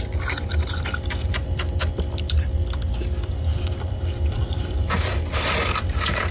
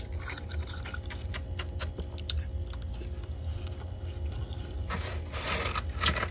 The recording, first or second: second